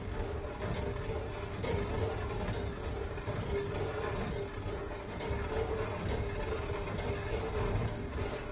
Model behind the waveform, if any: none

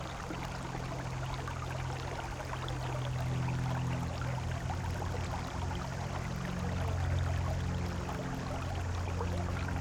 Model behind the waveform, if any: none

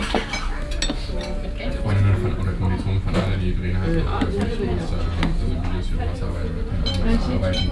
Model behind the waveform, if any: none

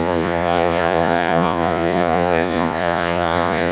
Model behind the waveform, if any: vocoder, Vocos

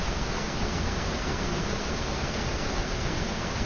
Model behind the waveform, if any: codec, SNAC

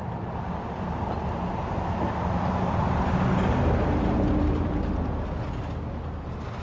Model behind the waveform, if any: none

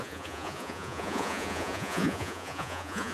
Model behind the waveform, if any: vocoder, Vocos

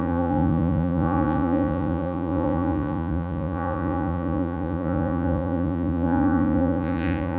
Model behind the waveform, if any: vocoder, Vocos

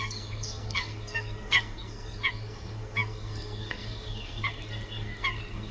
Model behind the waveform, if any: codec, SNAC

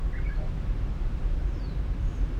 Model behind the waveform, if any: vocoder, BigVGAN v2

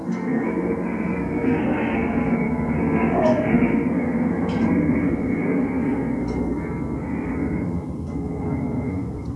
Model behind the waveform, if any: codec, SNAC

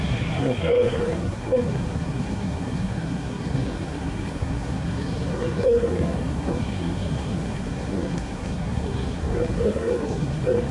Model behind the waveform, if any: codec, SNAC